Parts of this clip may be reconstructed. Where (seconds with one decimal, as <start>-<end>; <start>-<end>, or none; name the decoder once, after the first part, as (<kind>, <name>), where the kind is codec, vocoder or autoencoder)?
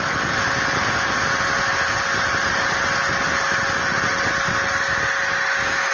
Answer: none